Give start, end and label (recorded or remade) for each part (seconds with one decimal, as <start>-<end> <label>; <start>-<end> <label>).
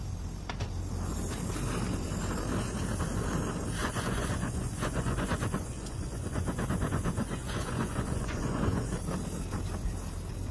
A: 0.0-3.8 recorded; 3.8-8.9 remade; 8.9-10.5 recorded